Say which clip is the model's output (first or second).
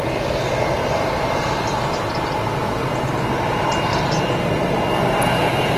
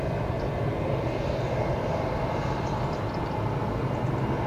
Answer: second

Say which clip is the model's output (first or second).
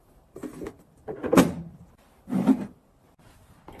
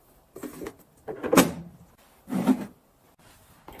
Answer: first